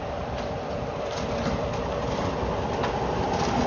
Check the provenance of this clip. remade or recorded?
recorded